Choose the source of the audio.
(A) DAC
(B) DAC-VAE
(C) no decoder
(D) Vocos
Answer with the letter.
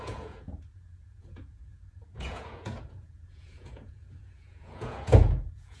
D